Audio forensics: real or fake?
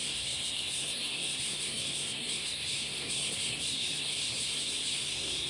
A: fake